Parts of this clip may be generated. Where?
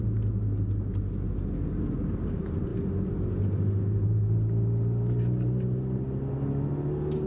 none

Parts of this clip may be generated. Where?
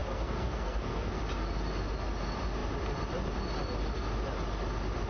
0.0-1.2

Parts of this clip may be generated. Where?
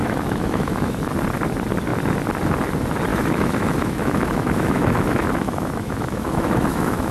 0.0-1.0; 3.1-7.1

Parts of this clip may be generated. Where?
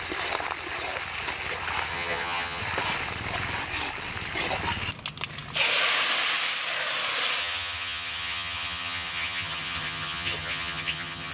1.9-2.6; 7.4-11.3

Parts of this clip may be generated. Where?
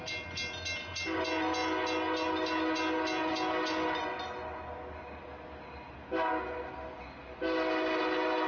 none